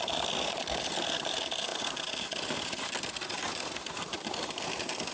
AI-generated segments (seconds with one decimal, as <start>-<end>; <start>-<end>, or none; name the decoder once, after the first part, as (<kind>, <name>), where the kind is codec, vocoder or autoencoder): none